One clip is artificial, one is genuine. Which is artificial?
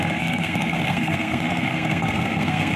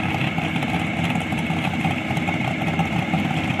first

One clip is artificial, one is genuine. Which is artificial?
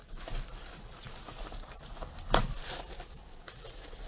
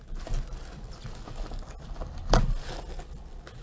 first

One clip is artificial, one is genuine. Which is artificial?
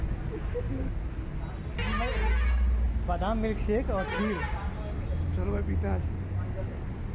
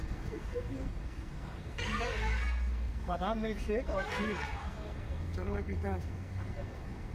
second